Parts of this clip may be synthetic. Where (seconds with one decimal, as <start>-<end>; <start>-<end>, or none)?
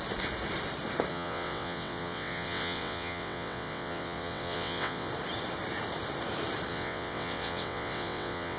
1.1-5.1; 6.7-8.6